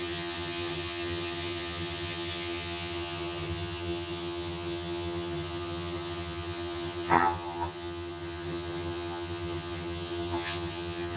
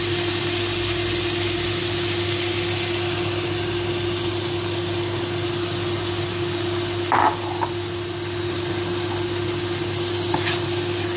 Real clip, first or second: second